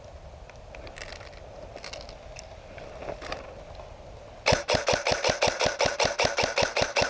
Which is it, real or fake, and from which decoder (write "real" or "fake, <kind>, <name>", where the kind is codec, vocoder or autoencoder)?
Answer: real